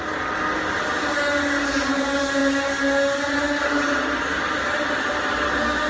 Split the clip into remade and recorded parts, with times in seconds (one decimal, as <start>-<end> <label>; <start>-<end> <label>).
0.0-5.9 recorded